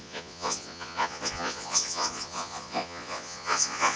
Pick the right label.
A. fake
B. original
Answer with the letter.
A